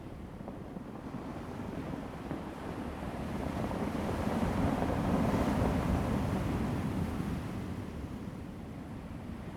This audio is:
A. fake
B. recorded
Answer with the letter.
A